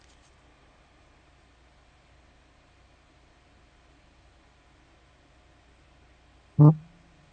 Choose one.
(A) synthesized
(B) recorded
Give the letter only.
B